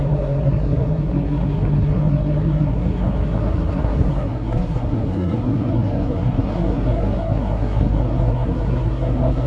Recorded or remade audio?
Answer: remade